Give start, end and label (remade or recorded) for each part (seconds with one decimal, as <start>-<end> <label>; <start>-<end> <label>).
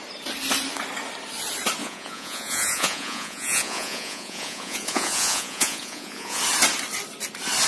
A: 0.0-1.8 recorded; 1.8-6.4 remade; 6.4-7.7 recorded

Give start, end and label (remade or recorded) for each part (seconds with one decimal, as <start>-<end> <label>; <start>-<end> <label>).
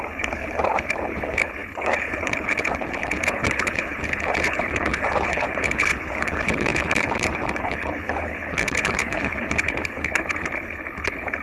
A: 0.0-11.4 remade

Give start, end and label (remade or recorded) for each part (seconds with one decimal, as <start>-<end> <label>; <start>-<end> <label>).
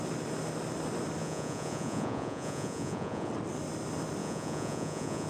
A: 0.0-1.2 recorded; 1.2-3.3 remade; 3.3-4.2 recorded; 4.2-5.3 remade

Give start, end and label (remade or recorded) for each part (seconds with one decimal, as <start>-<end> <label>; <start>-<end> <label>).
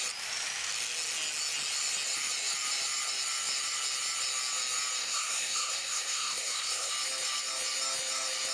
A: 0.0-5.0 recorded; 5.0-6.9 remade; 6.9-8.5 recorded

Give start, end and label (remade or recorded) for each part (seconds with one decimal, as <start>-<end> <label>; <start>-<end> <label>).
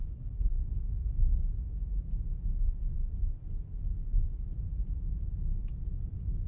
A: 0.0-0.6 remade; 0.6-6.5 recorded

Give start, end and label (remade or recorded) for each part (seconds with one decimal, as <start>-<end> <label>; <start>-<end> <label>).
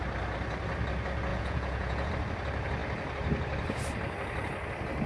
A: 0.0-1.3 recorded; 1.3-2.1 remade; 2.1-5.1 recorded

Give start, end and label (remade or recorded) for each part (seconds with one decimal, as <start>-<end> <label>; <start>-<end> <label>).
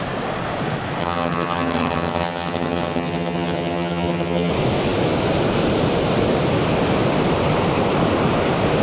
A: 0.0-1.0 recorded; 1.0-4.5 remade; 4.5-8.8 recorded